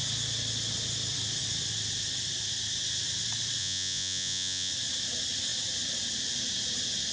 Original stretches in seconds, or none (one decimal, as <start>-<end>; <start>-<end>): 0.0-3.6; 4.7-7.1